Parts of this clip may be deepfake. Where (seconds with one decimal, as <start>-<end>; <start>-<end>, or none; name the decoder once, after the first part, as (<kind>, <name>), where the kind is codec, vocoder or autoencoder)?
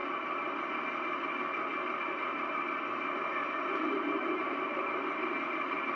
3.6-6.0 (vocoder, BigVGAN v2)